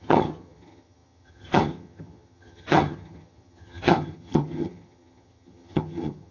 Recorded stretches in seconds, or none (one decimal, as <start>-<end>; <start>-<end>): none

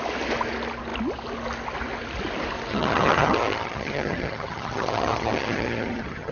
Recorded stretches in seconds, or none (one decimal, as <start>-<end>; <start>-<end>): 0.0-2.7

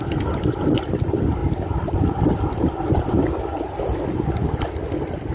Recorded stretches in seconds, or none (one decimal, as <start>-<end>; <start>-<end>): 0.0-5.3

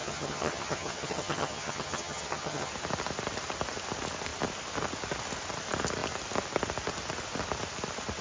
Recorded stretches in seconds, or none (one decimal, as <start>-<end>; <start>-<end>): 2.7-8.2